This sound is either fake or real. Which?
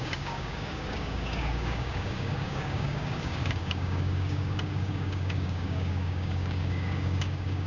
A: fake